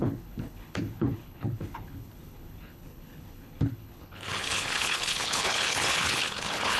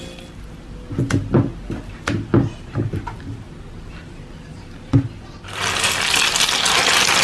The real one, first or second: second